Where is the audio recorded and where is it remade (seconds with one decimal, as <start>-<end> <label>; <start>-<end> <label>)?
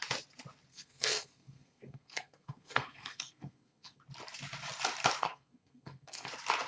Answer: 0.0-0.7 recorded; 0.7-4.0 remade; 4.0-5.2 recorded; 5.2-6.3 remade; 6.3-6.7 recorded